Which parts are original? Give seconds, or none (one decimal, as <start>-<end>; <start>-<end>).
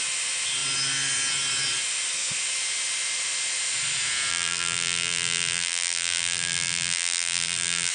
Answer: 0.0-4.3